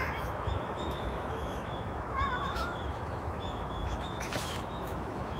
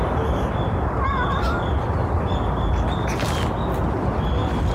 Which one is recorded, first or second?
second